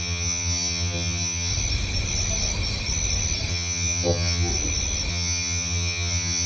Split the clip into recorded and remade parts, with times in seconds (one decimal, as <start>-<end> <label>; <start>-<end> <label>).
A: 0.0-1.5 remade; 1.5-3.5 recorded; 3.5-4.5 remade; 4.5-5.1 recorded; 5.1-6.5 remade

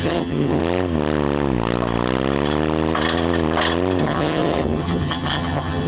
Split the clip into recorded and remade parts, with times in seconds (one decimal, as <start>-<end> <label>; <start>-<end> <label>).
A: 0.0-0.6 remade; 0.6-4.0 recorded; 4.0-5.9 remade

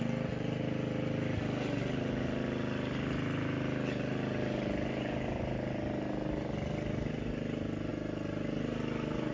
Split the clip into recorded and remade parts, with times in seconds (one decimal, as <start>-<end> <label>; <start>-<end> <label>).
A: 0.0-9.3 recorded

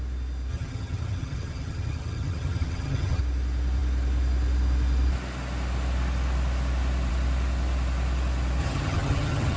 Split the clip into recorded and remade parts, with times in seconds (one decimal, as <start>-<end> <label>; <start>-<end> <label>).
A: 0.0-0.5 recorded; 0.5-3.2 remade; 3.2-8.6 recorded; 8.6-9.6 remade

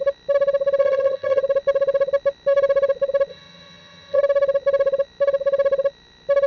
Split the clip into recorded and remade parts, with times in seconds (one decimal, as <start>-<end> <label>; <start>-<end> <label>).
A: 0.0-0.8 recorded; 0.8-1.4 remade; 1.4-3.3 recorded; 3.3-4.2 remade; 4.2-6.5 recorded